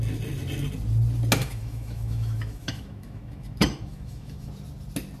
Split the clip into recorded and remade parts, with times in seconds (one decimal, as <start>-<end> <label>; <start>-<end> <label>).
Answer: 0.0-1.4 recorded; 1.4-4.5 remade; 4.5-5.2 recorded